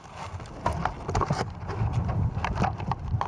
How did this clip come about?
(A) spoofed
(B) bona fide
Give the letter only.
B